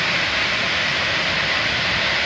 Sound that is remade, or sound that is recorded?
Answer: remade